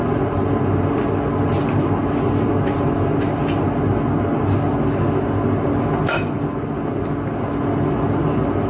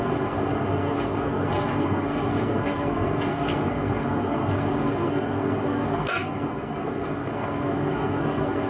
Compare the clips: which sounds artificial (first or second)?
second